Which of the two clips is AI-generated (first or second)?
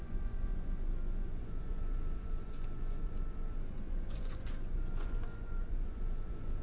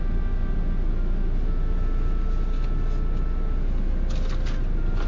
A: first